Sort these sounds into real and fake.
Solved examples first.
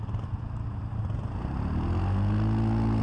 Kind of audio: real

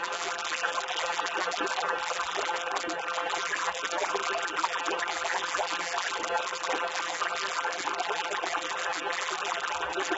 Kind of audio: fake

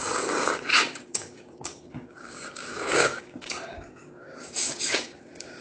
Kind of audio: fake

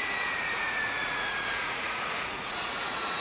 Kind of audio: fake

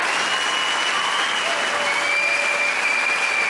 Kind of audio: real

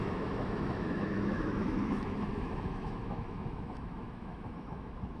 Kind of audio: fake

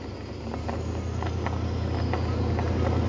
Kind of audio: real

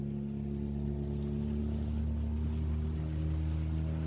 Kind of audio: real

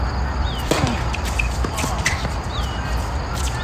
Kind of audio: real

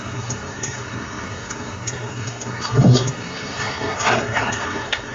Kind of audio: fake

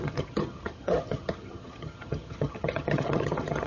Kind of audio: fake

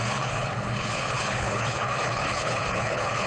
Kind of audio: fake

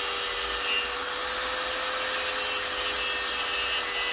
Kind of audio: real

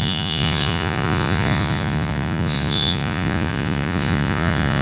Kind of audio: fake